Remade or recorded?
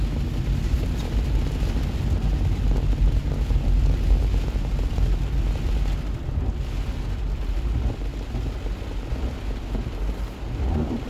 recorded